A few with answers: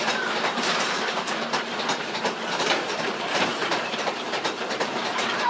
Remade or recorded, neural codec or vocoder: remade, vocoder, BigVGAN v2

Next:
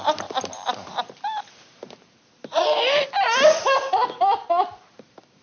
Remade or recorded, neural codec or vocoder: remade, vocoder, BigVGAN v2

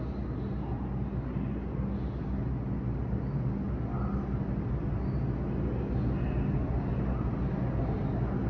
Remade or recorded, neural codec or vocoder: recorded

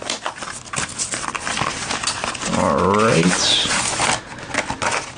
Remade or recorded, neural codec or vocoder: recorded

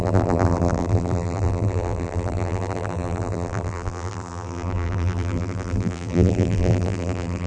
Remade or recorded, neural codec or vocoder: remade, vocoder, BigVGAN v2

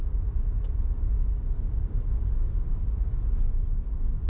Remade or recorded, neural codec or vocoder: recorded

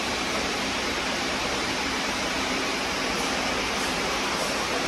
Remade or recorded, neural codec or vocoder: remade, vocoder, BigVGAN v2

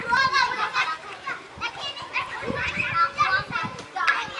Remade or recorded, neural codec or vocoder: remade, vocoder, BigVGAN v2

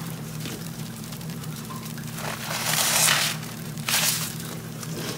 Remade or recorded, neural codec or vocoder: remade, vocoder, BigVGAN v2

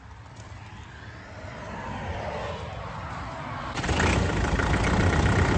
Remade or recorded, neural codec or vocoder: remade, vocoder, BigVGAN v2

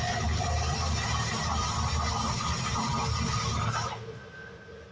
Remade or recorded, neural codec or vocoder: recorded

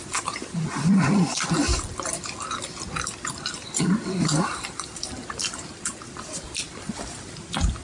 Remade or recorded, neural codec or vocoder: remade, vocoder, BigVGAN v2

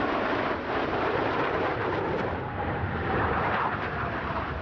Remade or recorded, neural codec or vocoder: remade, vocoder, BigVGAN v2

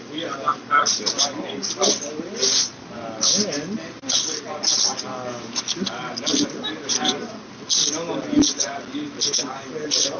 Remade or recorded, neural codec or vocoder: recorded